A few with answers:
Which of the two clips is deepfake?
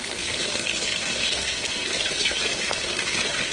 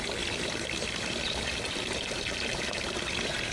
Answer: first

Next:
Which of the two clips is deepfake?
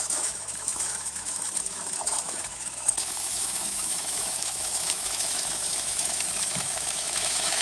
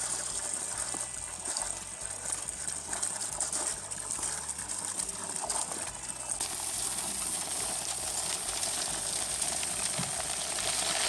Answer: first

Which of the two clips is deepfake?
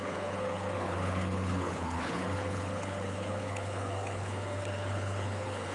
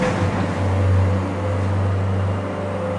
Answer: first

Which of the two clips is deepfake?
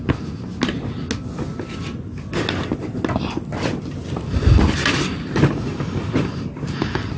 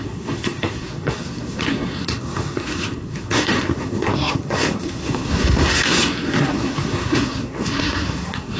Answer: second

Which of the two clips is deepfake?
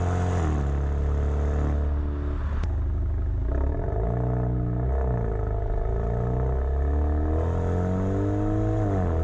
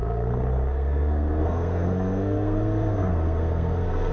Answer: second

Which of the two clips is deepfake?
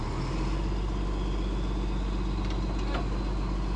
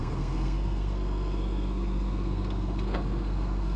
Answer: second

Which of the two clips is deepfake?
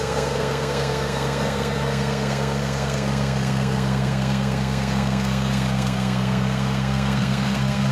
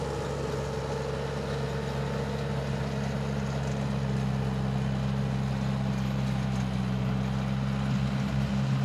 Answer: first